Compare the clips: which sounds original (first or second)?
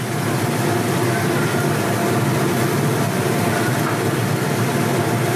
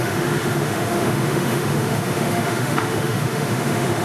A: first